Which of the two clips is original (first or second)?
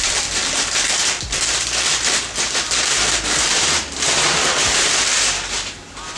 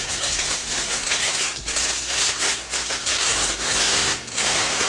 first